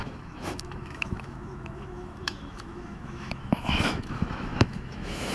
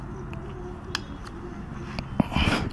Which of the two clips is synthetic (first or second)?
first